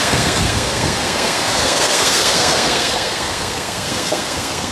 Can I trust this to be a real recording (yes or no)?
no